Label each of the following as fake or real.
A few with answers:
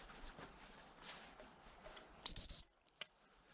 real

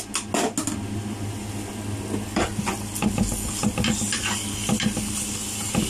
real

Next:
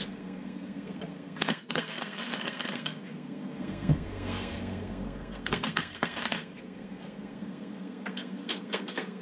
fake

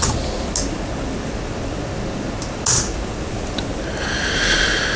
real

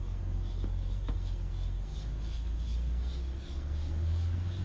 fake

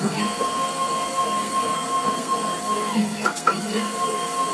fake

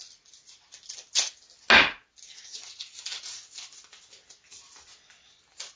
real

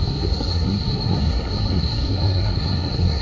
fake